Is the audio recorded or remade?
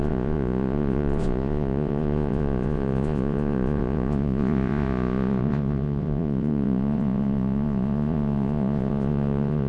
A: remade